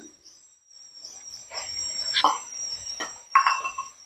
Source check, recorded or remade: remade